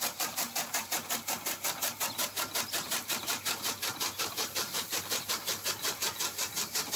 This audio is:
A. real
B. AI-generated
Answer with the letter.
B